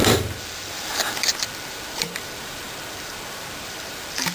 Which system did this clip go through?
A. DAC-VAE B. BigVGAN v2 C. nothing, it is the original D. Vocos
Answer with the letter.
B